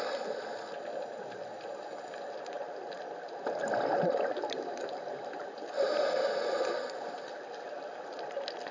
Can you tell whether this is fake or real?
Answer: real